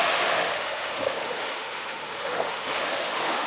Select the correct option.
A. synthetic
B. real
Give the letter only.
A